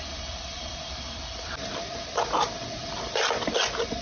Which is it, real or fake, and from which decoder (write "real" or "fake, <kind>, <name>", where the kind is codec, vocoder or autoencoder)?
fake, vocoder, BigVGAN v2